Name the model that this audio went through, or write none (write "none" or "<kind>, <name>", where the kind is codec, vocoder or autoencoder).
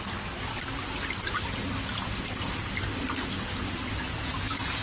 none